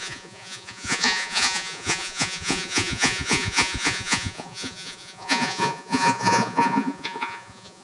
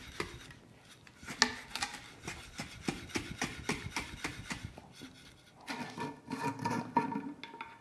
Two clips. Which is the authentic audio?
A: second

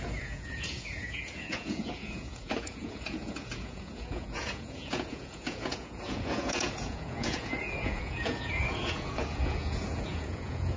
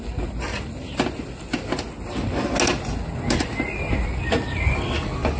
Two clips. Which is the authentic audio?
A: second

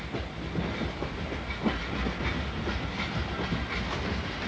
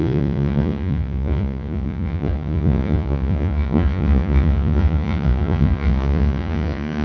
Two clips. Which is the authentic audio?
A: first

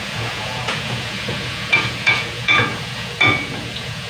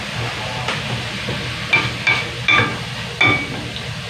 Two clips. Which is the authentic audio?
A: second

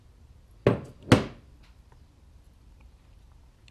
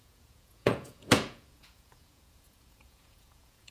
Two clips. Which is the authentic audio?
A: first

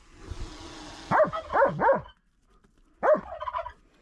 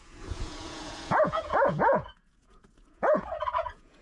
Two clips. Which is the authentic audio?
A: first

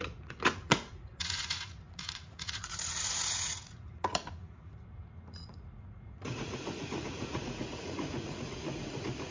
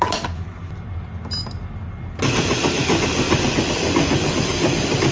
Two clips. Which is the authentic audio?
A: second